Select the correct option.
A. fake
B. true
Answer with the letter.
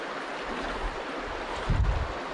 B